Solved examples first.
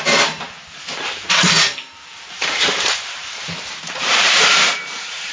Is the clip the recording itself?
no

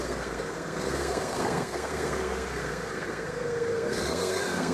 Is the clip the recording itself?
no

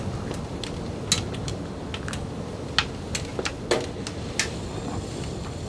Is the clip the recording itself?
yes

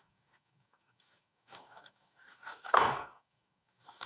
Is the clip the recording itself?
no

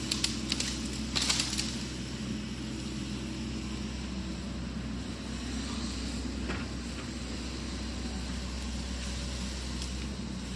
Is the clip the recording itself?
yes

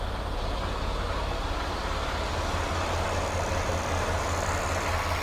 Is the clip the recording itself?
yes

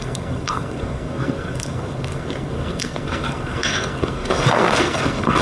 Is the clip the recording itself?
no